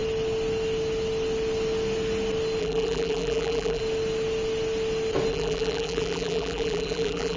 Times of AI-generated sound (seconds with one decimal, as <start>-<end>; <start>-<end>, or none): 2.6-3.8; 5.3-7.4